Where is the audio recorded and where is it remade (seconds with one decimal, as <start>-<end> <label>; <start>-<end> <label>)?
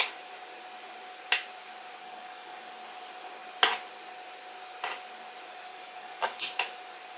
0.0-2.0 recorded; 2.0-2.6 remade; 2.6-5.7 recorded; 5.7-6.4 remade; 6.4-7.2 recorded